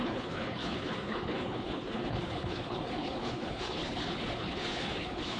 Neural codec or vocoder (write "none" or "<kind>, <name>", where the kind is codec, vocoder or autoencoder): codec, HILCodec